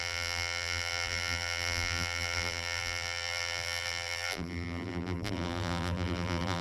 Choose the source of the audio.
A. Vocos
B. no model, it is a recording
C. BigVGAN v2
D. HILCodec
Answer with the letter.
C